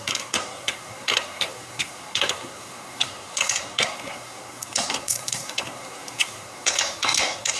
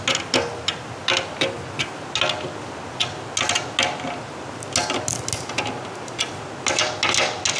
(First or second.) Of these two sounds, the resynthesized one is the first